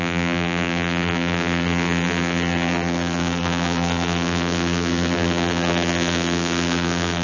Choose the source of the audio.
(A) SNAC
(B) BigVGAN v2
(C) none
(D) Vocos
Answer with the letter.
B